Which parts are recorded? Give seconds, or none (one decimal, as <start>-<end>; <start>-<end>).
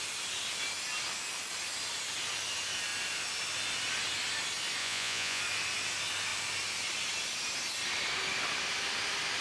0.0-4.8; 5.4-9.4